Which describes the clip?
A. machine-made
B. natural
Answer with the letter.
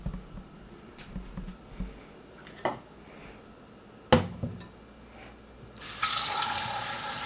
B